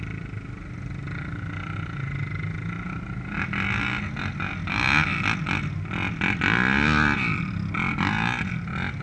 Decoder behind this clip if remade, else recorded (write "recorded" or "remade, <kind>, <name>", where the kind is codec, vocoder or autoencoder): recorded